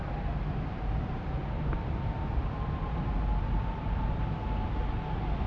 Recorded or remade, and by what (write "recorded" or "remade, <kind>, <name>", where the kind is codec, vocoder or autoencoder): recorded